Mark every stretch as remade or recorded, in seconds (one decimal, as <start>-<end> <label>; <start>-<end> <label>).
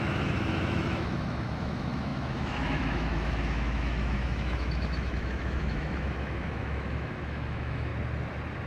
0.0-7.9 remade; 7.9-8.7 recorded